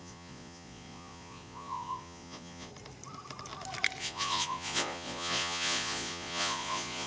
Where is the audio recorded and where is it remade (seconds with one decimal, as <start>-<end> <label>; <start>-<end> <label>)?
0.0-2.7 remade; 2.7-4.0 recorded; 4.0-7.1 remade